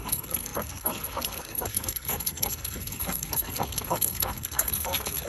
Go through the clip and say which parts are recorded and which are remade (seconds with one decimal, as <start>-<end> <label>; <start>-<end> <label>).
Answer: 0.0-5.3 remade